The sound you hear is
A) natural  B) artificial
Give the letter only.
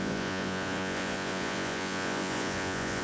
B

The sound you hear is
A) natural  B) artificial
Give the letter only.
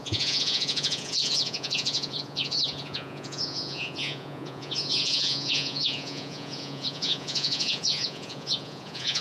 B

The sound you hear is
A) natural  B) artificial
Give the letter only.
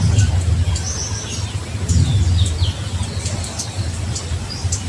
A